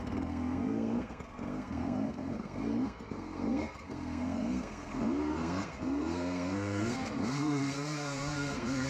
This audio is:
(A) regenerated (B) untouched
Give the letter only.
A